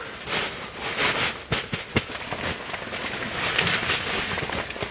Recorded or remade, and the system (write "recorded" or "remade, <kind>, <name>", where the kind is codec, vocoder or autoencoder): recorded